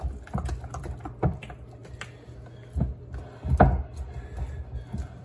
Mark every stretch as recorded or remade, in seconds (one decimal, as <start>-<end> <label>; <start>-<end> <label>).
0.0-5.2 recorded